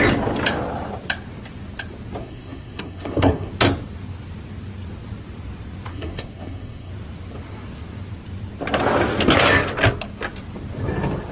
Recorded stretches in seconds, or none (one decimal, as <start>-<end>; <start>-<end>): 0.0-2.2; 3.5-5.9; 6.9-11.3